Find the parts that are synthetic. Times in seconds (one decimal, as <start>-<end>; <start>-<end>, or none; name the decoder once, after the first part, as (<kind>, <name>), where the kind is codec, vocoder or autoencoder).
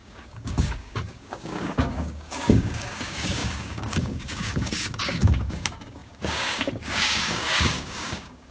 0.0-8.5 (codec, DAC)